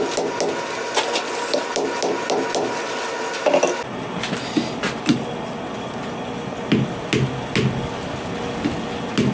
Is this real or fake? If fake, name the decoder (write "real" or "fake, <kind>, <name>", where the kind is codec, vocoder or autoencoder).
real